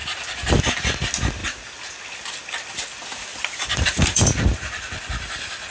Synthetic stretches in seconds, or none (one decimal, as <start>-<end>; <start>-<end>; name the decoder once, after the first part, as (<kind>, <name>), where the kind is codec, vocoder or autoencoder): 0.0-0.6 (vocoder, BigVGAN v2); 3.3-5.7